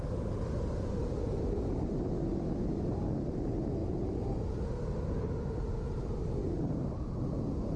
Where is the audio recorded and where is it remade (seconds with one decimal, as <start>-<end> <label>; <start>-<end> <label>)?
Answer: 0.0-7.8 recorded